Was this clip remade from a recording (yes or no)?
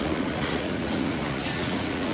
yes